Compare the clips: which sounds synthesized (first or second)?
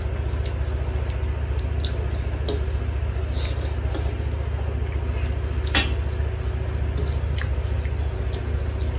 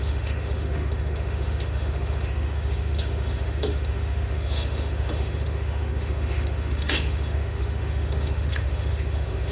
second